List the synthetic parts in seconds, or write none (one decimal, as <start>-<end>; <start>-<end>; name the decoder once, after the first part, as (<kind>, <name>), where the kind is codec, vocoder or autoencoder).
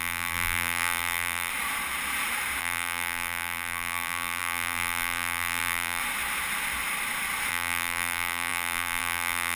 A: 0.0-1.5 (vocoder, BigVGAN v2); 2.6-6.0; 7.5-9.6